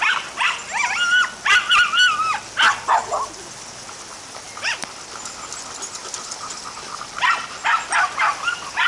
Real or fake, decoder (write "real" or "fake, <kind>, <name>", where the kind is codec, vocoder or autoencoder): real